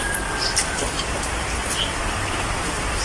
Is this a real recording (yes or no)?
yes